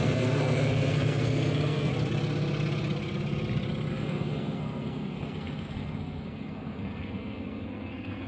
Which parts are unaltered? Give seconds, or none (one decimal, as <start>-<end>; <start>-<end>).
1.9-3.9